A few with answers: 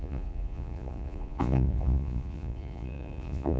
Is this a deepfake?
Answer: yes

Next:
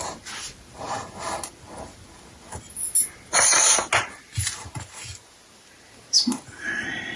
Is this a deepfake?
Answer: no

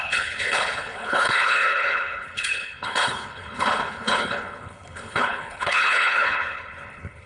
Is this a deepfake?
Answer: yes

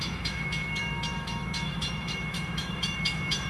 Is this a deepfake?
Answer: yes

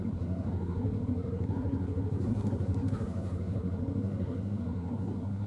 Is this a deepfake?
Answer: yes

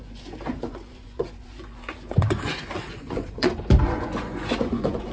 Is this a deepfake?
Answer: yes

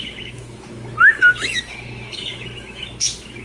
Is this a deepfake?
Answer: yes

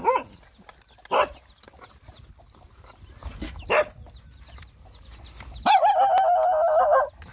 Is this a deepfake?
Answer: no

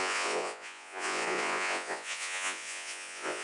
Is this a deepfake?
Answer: yes